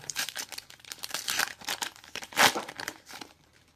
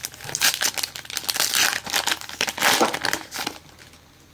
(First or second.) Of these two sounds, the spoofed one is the first